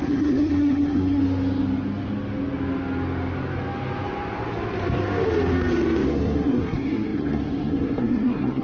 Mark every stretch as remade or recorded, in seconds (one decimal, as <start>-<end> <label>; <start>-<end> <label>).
0.0-1.2 remade; 1.2-6.1 recorded; 6.1-8.6 remade